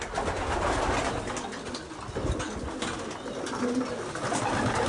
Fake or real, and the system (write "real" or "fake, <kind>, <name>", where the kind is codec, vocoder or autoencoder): real